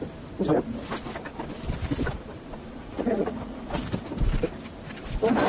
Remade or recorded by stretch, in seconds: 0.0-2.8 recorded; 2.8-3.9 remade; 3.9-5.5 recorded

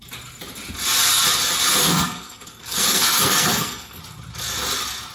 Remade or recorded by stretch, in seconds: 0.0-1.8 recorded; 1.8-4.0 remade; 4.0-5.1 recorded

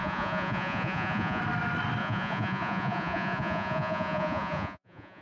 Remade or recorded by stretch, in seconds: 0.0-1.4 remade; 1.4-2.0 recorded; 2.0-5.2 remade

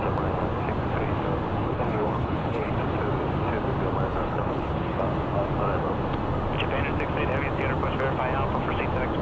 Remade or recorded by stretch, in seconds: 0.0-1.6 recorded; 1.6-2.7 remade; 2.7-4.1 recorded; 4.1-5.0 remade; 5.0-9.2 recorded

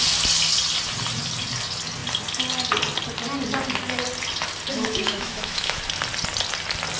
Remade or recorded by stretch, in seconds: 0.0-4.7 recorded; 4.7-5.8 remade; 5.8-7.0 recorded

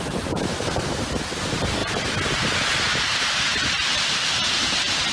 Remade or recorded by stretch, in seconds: 0.0-1.8 remade; 1.8-2.8 recorded; 2.8-5.1 remade